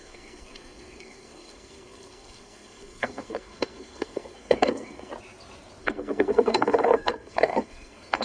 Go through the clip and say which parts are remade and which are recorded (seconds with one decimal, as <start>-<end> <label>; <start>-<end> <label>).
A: 0.0-5.1 remade; 5.1-5.8 recorded; 5.8-8.2 remade